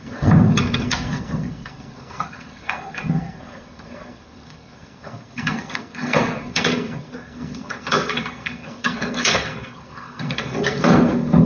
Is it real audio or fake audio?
fake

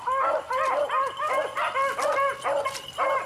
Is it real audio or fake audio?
real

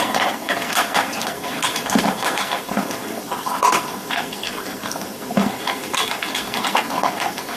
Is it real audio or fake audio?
fake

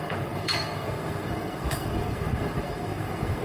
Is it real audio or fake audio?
fake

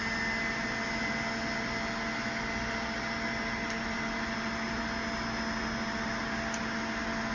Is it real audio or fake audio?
real